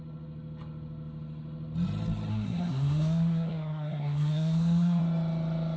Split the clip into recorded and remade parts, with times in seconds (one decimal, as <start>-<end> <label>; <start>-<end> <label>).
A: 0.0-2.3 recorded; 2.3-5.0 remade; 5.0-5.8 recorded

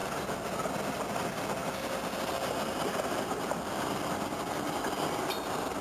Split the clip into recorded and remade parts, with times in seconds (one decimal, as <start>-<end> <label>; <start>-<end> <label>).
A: 0.0-0.7 remade; 0.7-5.8 recorded

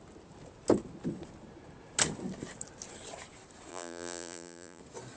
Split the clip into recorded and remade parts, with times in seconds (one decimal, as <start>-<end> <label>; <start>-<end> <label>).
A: 0.0-3.7 recorded; 3.7-4.8 remade; 4.8-5.2 recorded

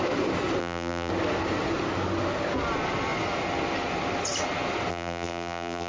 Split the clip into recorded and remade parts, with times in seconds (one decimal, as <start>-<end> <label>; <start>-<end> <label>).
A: 0.0-0.6 recorded; 0.6-1.1 remade; 1.1-4.9 recorded; 4.9-5.9 remade

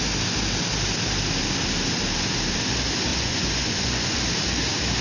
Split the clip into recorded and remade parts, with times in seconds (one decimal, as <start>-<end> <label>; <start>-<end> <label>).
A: 0.0-3.1 recorded; 3.1-4.2 remade; 4.2-5.0 recorded